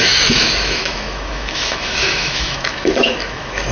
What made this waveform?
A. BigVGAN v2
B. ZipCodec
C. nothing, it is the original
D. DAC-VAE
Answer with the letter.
D